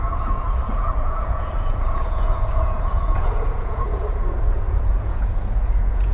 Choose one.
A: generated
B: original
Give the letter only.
A